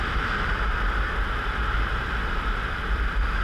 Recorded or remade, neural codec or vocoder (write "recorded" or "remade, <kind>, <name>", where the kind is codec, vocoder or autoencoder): remade, vocoder, BigVGAN v2